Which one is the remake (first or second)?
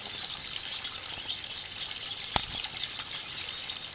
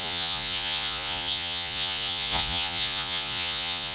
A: second